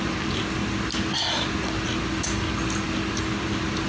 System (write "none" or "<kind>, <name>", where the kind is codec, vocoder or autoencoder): none